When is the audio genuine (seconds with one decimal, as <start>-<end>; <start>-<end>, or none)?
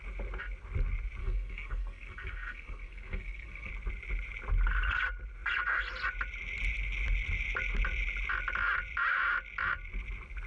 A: 0.0-1.2; 3.7-10.5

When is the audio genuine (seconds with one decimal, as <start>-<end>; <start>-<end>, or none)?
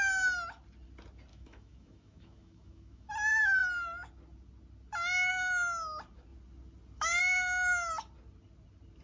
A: 0.0-1.3; 3.1-9.0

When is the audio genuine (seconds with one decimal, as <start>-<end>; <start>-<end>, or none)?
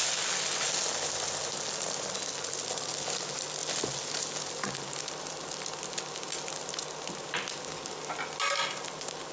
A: 0.0-9.3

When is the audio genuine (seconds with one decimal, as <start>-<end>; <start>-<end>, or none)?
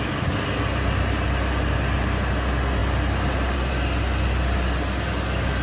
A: 0.0-5.6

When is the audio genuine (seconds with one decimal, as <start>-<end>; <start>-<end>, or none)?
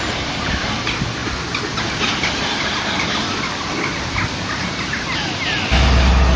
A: 0.0-6.4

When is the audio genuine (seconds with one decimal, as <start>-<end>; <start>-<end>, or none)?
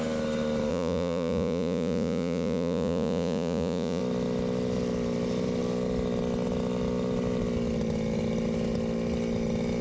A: 0.0-0.7; 4.0-9.8